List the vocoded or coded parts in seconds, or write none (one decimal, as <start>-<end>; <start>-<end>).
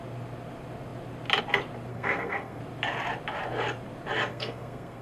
1.9-2.6; 4.3-5.0